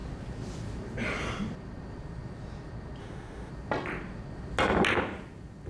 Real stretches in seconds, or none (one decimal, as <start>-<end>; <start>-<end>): 0.0-3.0; 3.5-5.7